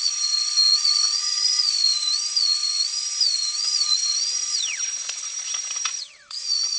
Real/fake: fake